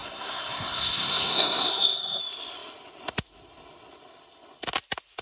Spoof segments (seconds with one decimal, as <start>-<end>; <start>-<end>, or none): 0.0-2.2